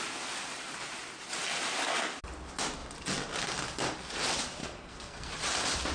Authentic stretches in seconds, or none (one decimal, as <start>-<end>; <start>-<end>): 0.0-4.6; 5.3-5.9